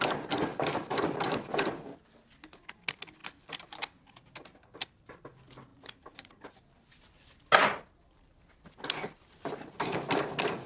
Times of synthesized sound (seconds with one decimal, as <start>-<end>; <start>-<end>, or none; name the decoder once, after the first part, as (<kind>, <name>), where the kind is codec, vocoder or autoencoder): 5.7-6.5 (vocoder, BigVGAN v2)